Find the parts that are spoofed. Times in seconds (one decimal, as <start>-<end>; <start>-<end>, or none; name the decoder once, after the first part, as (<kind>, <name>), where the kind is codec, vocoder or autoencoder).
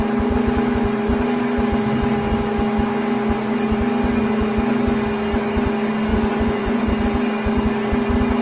6.1-6.8 (vocoder, Vocos)